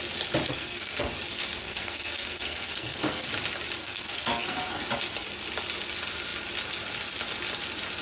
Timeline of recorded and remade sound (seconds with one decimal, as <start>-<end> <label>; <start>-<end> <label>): 0.0-0.5 recorded; 0.5-1.1 remade; 1.1-1.6 recorded; 1.6-3.3 remade; 3.3-3.8 recorded; 3.8-4.8 remade; 4.8-8.0 recorded